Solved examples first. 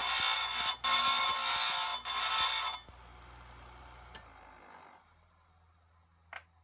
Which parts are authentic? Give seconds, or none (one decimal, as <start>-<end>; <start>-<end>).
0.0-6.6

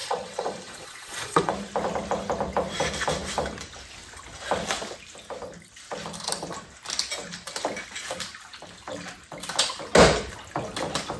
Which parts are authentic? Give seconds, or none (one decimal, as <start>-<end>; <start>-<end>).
1.5-11.2

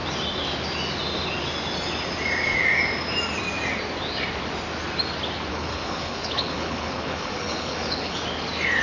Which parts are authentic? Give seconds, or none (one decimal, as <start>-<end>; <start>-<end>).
0.0-5.5; 8.2-8.8

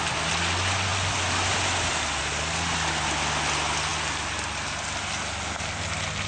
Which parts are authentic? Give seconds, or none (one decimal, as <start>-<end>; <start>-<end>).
0.0-6.3